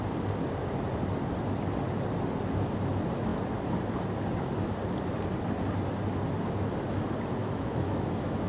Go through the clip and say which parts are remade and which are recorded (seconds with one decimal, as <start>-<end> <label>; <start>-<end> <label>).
0.0-7.4 recorded; 7.4-8.5 remade